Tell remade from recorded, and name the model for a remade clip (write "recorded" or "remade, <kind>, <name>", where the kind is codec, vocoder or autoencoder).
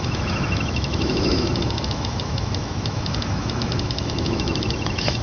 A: remade, autoencoder, DAC-VAE